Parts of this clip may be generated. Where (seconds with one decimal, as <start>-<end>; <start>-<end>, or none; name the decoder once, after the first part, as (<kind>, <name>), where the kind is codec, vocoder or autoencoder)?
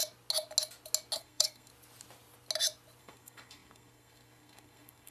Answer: 1.2-1.7 (codec, SNAC); 3.0-5.1